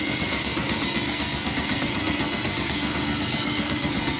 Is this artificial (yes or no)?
yes